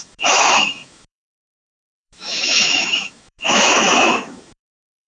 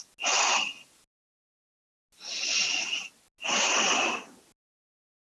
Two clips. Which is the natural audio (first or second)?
second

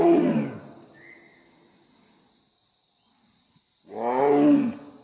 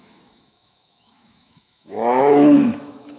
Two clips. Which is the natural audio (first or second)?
first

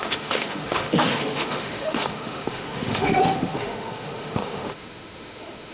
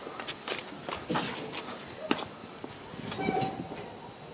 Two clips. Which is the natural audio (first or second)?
second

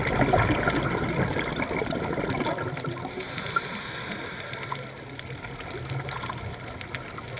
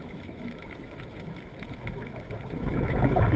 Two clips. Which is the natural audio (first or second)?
first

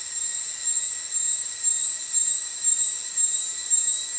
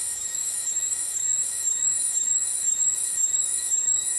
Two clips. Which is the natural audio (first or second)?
first